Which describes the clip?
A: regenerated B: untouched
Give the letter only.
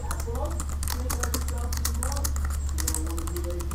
B